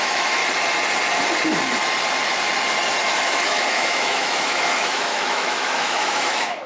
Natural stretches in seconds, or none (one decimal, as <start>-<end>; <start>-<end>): 0.4-3.1

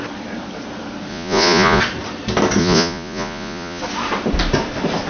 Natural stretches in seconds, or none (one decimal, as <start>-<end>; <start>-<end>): 0.0-1.1; 1.8-2.6; 3.8-5.1

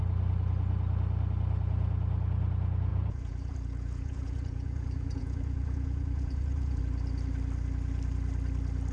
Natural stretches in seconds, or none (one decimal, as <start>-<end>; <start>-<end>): 0.0-2.9; 6.8-8.9

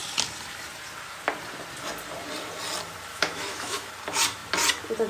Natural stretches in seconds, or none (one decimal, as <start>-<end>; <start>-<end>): 0.0-3.1; 3.9-5.1

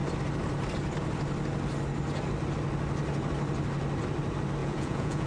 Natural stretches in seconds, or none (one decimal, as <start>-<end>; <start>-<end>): 0.0-4.6

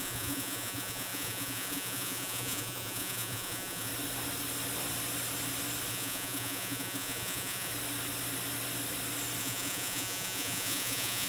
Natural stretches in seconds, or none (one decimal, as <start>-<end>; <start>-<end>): 3.9-5.9; 7.7-9.4

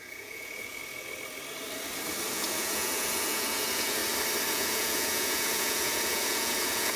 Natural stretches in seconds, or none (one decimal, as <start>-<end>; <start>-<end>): 0.8-2.3; 4.0-4.5

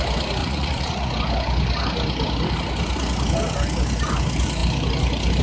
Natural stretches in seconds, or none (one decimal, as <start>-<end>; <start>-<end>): 0.0-0.4; 1.1-5.4